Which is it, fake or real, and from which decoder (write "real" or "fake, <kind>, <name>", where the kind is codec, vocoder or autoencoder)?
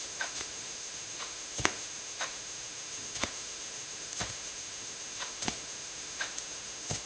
fake, autoencoder, DAC-VAE